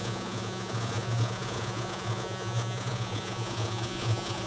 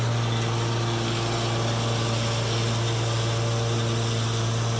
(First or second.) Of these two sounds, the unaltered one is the second